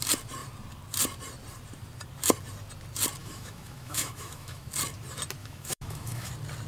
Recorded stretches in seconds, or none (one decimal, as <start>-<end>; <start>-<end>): 0.0-3.2; 4.7-5.4; 6.3-6.7